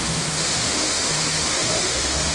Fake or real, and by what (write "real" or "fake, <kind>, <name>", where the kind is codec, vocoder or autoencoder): fake, autoencoder, DAC-VAE